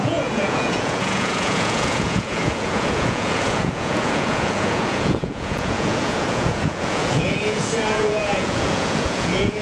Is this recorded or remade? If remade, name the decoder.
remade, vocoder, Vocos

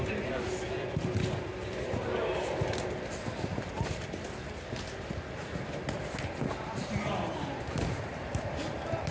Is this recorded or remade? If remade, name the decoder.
recorded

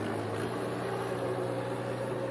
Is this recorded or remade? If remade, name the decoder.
recorded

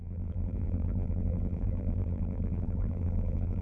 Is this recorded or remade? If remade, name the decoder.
remade, vocoder, BigVGAN v2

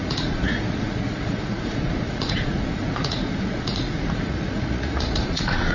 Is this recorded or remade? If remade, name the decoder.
remade, vocoder, Vocos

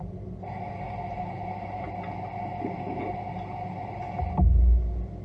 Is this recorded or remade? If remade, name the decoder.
recorded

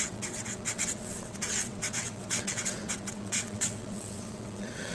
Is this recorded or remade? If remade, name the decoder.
remade, vocoder, WaveNeXt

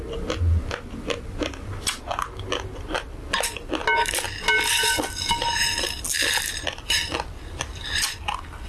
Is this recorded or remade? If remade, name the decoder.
recorded